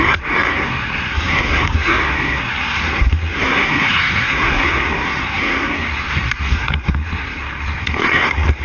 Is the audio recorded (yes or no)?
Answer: no